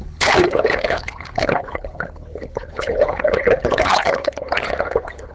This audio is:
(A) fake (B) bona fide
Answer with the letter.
A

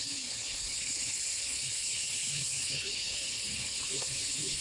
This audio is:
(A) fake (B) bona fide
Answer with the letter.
A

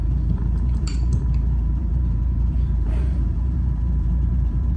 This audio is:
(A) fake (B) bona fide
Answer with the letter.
A